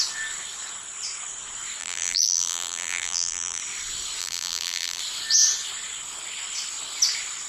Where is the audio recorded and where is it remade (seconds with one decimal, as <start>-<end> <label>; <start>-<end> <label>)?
0.0-1.8 recorded; 1.8-3.6 remade; 3.6-4.2 recorded; 4.2-5.0 remade; 5.0-7.5 recorded